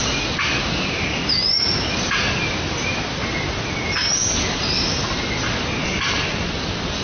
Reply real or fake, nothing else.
real